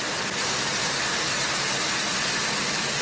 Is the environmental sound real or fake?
real